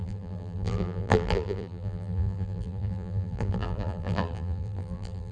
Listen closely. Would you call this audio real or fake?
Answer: fake